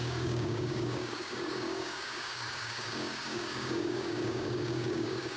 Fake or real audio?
fake